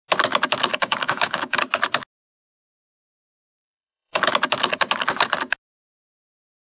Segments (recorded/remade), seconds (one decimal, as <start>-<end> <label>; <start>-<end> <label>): 0.0-0.7 recorded; 0.7-1.6 remade; 1.6-3.4 recorded; 3.4-4.3 remade; 4.3-6.8 recorded